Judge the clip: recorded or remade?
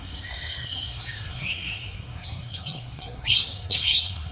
remade